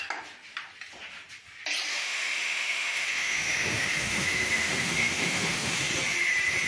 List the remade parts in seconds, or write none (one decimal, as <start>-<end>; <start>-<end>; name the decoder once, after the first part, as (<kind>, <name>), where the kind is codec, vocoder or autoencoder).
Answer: 1.9-5.9 (autoencoder, DAC-VAE)